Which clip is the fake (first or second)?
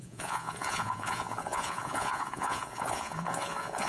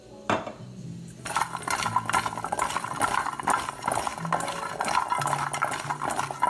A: first